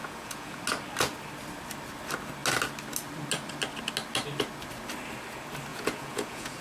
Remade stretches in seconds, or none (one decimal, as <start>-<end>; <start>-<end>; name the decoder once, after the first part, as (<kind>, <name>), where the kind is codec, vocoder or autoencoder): 0.0-0.6 (vocoder, Vocos); 5.7-6.6